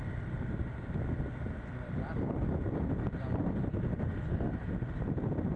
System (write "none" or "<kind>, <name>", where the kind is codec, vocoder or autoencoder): none